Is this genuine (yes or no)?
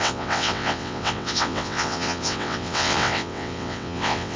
no